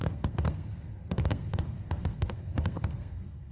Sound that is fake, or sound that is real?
fake